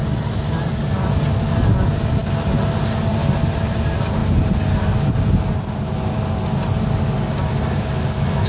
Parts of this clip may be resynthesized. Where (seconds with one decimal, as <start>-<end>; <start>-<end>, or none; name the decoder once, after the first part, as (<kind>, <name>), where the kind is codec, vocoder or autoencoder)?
none

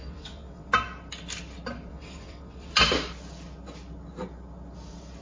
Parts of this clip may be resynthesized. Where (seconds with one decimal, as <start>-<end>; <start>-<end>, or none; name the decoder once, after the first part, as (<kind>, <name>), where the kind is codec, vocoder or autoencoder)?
0.0-0.7 (vocoder, WaveNeXt); 1.9-2.7

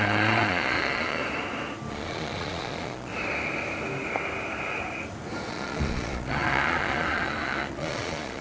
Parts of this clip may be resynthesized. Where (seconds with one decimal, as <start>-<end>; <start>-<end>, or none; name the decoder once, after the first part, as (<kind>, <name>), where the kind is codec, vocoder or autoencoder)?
0.0-1.2 (vocoder, Vocos); 1.9-3.1; 5.5-8.4

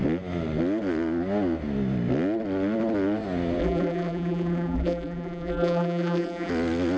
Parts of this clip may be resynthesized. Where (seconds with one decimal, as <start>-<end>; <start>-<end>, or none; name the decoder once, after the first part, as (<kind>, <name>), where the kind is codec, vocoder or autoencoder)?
3.6-6.5 (vocoder, BigVGAN v2)

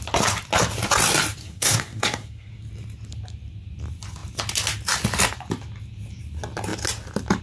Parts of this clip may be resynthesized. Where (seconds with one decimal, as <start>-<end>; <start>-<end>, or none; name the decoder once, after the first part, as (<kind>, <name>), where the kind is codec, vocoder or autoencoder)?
1.4-2.5 (codec, SNAC)